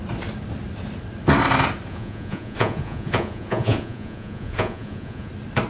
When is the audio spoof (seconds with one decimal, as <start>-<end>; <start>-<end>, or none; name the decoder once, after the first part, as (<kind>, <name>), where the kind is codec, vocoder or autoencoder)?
1.9-5.3 (vocoder, Vocos)